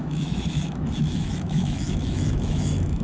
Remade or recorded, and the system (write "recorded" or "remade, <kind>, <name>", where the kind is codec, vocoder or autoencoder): remade, autoencoder, DAC-VAE